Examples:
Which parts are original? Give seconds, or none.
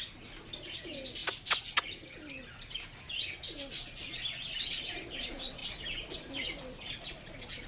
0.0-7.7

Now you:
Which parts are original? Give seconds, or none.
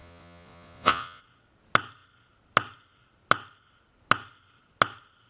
1.2-5.3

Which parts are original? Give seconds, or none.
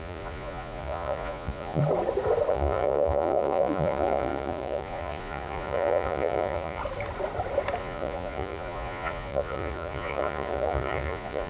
1.8-2.5; 6.8-7.8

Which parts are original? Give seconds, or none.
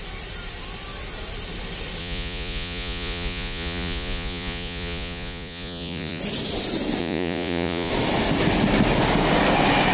0.0-2.0; 6.2-7.0; 7.9-9.9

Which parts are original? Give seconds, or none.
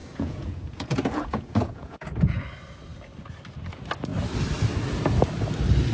2.4-5.9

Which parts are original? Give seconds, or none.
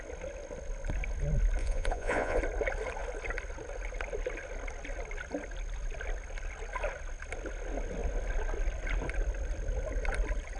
0.0-1.6; 2.4-10.6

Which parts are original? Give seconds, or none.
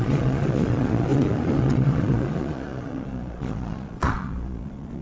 none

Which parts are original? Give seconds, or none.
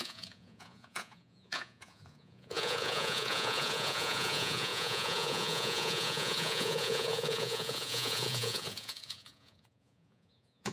none